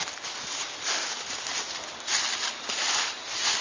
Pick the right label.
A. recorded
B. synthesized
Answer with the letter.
A